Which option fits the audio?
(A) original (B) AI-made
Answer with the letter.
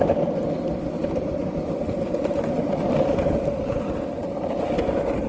B